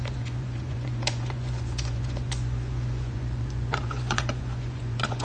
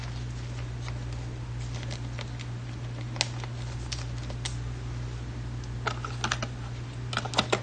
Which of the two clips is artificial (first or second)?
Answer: first